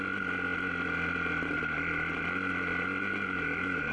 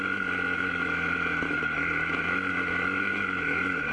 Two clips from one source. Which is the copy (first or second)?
second